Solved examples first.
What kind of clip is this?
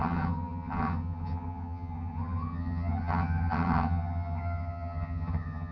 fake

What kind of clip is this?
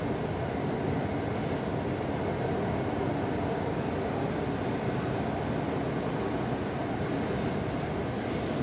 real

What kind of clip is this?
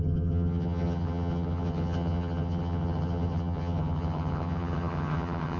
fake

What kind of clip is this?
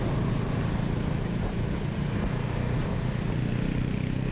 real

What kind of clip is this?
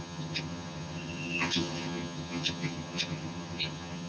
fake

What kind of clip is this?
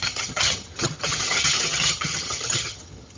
fake